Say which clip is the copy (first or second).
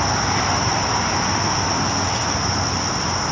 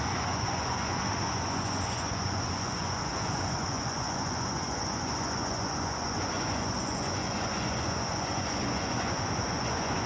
second